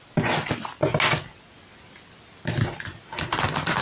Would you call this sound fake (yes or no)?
no